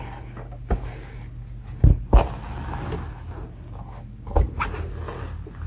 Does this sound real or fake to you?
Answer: real